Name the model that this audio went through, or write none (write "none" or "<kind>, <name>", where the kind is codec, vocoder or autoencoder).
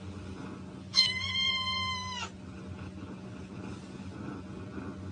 none